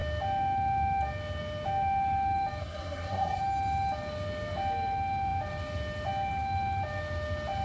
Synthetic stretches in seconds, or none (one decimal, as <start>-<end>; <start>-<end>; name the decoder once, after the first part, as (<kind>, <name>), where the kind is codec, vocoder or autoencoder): 2.6-3.4 (codec, SNAC)